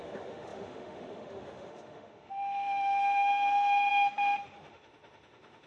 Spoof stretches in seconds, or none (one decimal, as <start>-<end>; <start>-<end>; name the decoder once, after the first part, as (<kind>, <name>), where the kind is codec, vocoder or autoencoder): 0.0-5.7 (autoencoder, DAC-VAE)